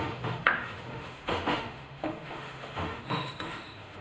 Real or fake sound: fake